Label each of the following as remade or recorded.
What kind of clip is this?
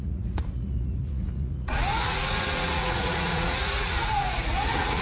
remade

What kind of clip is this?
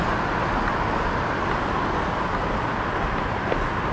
recorded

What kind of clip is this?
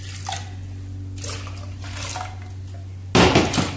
recorded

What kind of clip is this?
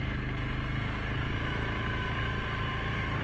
recorded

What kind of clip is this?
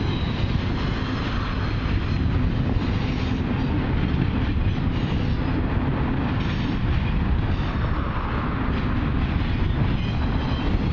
recorded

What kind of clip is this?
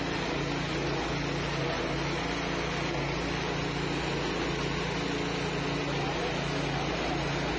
recorded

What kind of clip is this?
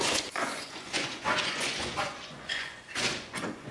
remade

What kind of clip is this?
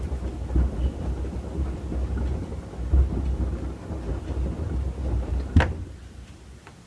recorded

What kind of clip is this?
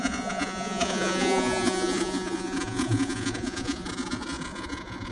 remade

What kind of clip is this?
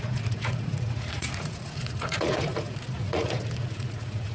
remade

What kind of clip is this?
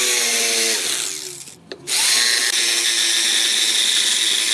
recorded